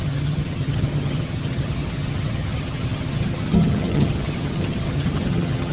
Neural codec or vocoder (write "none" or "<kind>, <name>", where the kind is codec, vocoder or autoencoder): vocoder, HiFi-GAN